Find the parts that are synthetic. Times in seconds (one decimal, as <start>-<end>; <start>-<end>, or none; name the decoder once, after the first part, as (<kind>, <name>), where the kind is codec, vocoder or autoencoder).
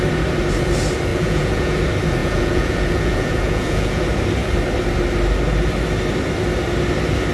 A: 1.1-1.8 (vocoder, Vocos); 2.2-4.0